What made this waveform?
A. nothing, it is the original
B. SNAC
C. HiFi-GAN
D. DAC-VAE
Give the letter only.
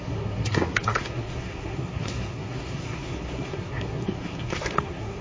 B